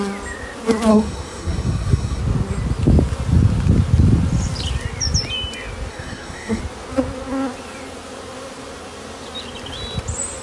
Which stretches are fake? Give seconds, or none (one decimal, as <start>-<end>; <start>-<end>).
0.9-2.2; 5.9-6.6